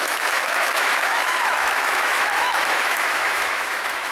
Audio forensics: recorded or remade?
remade